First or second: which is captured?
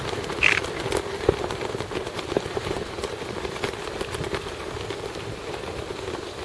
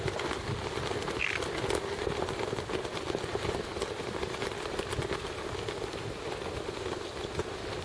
second